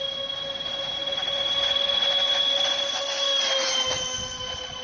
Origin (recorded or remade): recorded